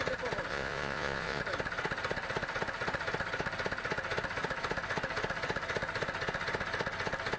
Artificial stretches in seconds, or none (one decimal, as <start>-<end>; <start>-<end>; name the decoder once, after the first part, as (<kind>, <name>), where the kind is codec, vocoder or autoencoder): 0.5-1.4 (vocoder, Vocos)